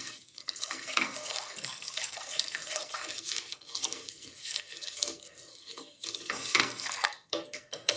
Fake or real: fake